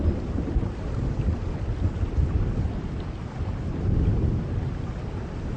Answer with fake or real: real